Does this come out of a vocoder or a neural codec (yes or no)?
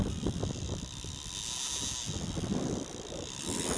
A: no